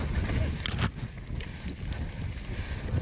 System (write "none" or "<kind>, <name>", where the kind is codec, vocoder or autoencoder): none